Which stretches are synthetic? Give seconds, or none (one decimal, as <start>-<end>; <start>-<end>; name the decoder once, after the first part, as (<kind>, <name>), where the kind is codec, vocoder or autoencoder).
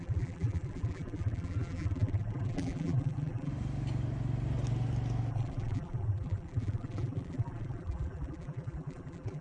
0.0-3.5 (vocoder, BigVGAN v2); 5.3-9.4